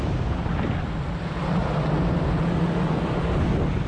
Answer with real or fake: real